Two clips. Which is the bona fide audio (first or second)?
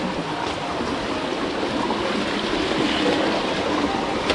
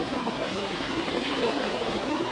first